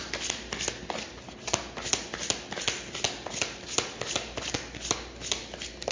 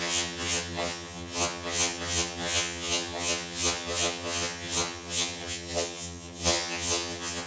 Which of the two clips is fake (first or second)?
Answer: second